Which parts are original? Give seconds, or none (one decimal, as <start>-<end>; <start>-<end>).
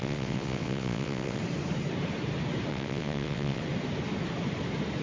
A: 1.4-2.7; 3.6-5.0